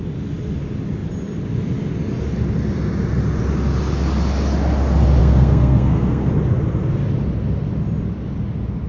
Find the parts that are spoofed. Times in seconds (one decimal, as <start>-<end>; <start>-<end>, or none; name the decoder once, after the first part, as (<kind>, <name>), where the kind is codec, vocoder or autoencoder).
5.2-6.3 (codec, SNAC)